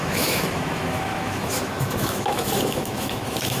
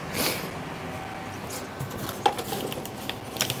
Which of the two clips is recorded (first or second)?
second